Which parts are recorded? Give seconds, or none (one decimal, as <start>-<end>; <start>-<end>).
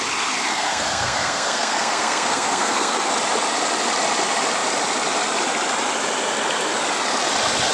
0.0-0.5; 3.1-7.7